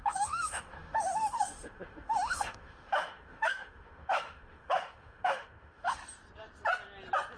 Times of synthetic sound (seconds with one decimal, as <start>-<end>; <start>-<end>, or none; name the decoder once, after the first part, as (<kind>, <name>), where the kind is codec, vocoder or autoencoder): 0.0-6.0 (autoencoder, DAC-VAE)